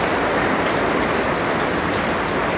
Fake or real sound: real